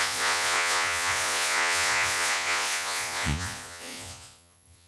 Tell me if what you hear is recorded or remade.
remade